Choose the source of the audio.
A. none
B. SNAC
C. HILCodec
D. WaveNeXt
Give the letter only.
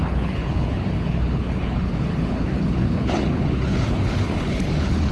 C